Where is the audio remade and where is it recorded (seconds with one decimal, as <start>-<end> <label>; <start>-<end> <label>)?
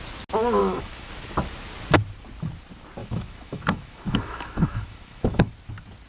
0.0-0.6 recorded; 0.6-1.1 remade; 1.1-3.0 recorded; 3.0-5.5 remade; 5.5-6.1 recorded